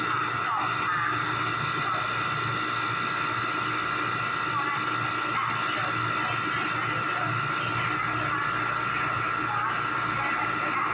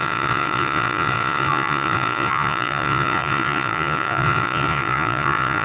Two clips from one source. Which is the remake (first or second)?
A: second